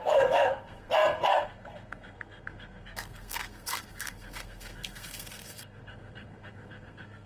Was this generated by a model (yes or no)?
yes